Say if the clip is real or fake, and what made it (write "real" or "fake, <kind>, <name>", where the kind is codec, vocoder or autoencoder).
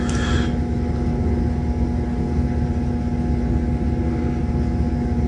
real